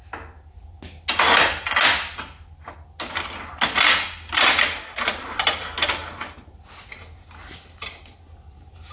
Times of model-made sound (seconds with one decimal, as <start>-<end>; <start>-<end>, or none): none